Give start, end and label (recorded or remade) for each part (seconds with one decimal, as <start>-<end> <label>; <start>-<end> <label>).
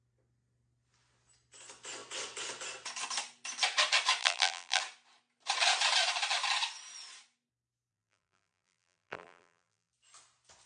0.0-4.2 recorded; 4.2-4.8 remade; 4.8-7.9 recorded; 7.9-9.9 remade; 9.9-10.7 recorded